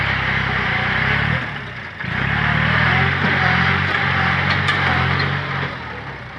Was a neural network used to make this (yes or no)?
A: no